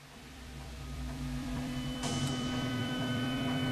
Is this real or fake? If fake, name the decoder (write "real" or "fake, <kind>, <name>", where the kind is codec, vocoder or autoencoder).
fake, vocoder, BigVGAN v2